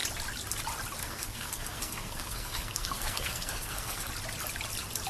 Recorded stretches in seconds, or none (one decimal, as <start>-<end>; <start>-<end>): 0.0-1.0; 4.1-5.1

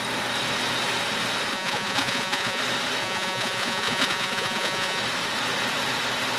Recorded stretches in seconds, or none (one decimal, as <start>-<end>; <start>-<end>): 0.0-1.5; 2.6-3.0; 5.0-6.4